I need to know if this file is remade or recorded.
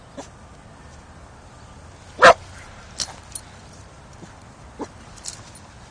recorded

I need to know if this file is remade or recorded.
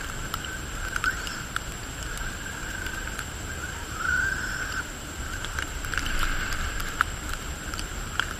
remade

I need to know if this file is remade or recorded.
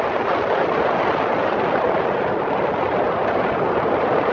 recorded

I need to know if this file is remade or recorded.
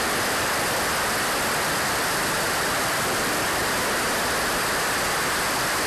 remade